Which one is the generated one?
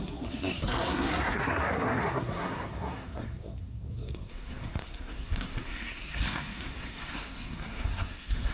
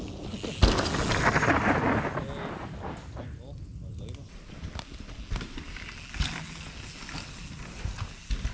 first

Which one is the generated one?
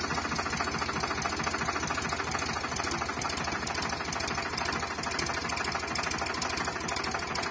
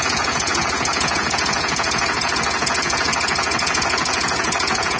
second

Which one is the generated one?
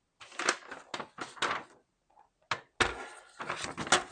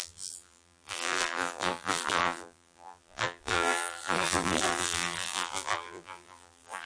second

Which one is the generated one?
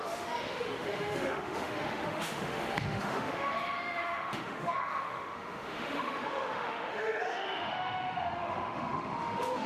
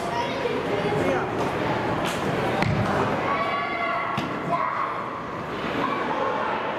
first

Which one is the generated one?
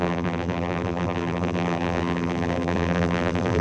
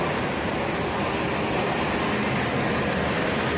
first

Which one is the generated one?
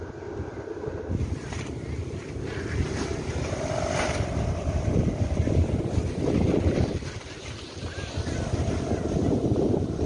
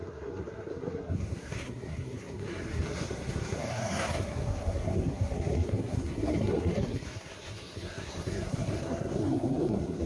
second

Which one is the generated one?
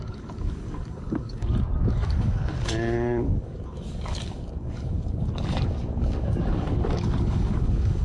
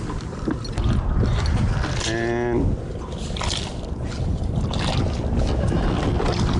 first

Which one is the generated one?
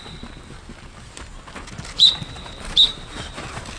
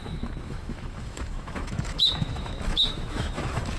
second